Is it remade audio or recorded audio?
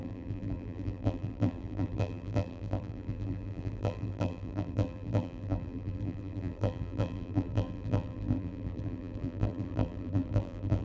remade